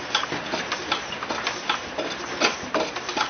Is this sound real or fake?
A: real